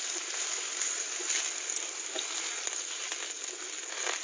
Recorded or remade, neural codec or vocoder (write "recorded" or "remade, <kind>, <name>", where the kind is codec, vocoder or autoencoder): recorded